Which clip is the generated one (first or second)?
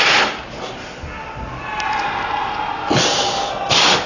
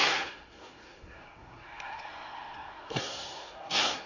second